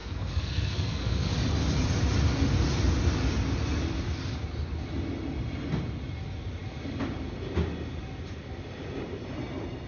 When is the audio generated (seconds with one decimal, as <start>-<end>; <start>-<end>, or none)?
0.0-1.3